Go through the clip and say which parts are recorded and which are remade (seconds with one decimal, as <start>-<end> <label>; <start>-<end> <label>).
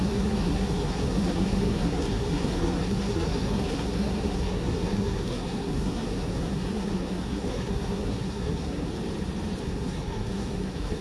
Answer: 0.0-8.9 remade; 8.9-9.6 recorded; 9.6-11.0 remade